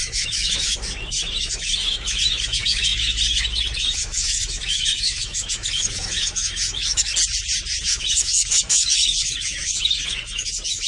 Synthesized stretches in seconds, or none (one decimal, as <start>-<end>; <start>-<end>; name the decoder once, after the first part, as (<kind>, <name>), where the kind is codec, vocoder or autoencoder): 0.0-7.1 (autoencoder, DAC-VAE); 7.8-10.9